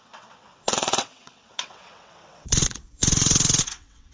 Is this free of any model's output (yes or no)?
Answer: no